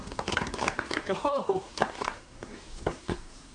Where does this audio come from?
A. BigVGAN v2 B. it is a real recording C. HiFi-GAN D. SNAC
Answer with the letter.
D